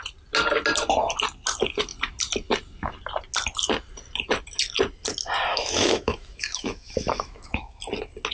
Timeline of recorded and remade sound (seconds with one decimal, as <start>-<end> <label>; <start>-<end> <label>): 0.0-5.5 recorded; 5.5-7.8 remade; 7.8-8.3 recorded